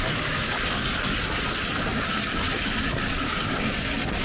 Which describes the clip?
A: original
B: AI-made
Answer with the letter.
A